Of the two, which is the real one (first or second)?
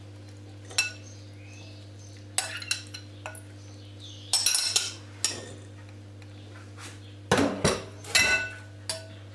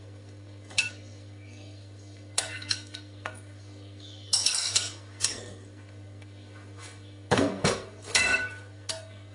first